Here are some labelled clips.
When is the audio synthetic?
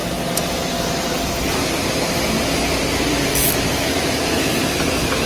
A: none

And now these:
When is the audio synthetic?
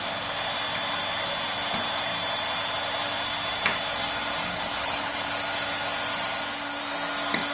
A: 4.4-5.3 (codec, HILCodec)